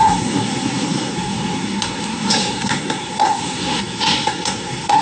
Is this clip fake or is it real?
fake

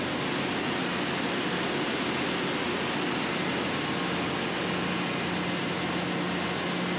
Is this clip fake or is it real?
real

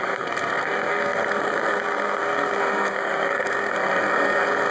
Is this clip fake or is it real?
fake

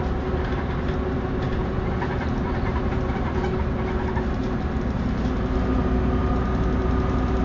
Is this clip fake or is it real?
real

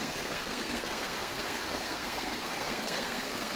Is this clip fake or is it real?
fake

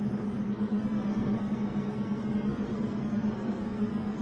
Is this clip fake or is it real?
fake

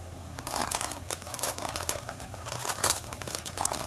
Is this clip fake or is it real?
fake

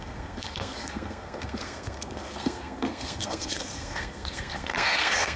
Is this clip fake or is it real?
fake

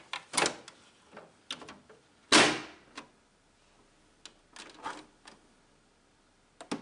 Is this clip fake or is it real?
real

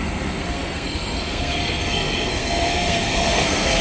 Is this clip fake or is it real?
fake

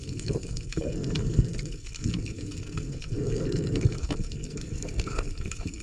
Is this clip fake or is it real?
fake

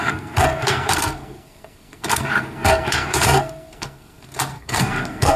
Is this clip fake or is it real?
fake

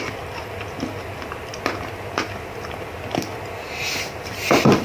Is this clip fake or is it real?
real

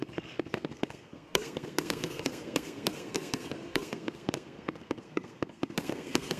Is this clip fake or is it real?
fake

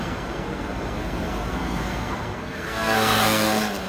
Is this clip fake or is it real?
fake